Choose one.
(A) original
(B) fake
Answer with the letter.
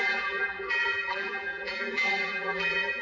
B